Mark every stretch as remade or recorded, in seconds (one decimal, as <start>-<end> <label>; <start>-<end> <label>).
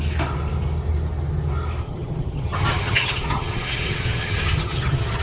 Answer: 0.0-1.8 recorded; 1.8-5.2 remade